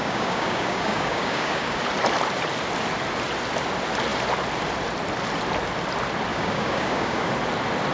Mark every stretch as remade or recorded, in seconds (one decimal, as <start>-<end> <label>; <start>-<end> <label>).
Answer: 0.0-1.8 remade; 1.8-6.3 recorded; 6.3-7.3 remade; 7.3-7.9 recorded